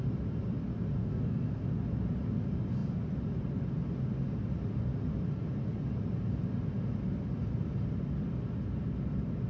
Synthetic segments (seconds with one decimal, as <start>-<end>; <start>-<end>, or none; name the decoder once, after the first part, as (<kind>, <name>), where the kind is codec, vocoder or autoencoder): 1.0-1.6 (codec, SNAC)